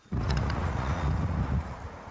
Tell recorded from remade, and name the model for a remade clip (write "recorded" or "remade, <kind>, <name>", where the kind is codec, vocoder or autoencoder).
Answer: remade, vocoder, Vocos